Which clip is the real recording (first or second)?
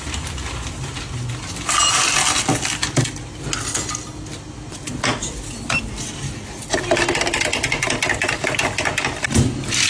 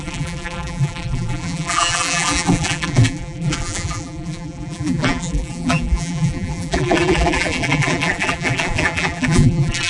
first